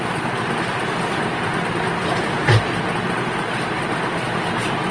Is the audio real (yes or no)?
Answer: yes